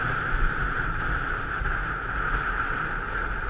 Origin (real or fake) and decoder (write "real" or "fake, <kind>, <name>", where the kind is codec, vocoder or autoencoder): fake, vocoder, BigVGAN v2